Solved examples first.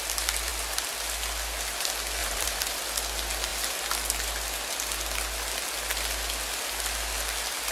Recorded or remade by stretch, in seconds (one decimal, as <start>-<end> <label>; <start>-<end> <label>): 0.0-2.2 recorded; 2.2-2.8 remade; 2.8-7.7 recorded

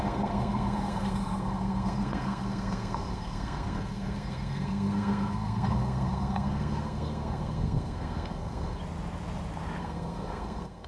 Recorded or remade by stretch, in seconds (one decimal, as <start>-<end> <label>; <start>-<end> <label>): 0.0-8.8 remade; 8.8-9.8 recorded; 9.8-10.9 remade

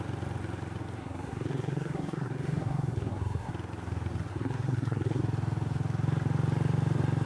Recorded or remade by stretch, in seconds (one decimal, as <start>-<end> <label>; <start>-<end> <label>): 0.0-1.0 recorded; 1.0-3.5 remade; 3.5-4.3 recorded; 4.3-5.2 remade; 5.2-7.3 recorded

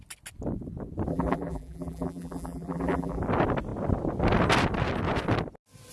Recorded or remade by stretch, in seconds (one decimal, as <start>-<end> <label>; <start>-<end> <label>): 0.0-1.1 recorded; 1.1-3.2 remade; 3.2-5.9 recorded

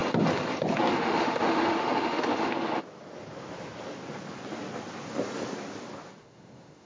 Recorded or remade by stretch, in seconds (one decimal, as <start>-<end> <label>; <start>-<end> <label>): 0.0-0.9 recorded; 0.9-2.5 remade; 2.5-6.2 recorded; 6.2-6.9 remade